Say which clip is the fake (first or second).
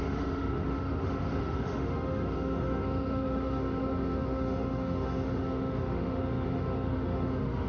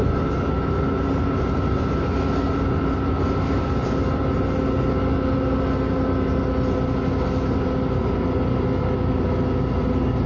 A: first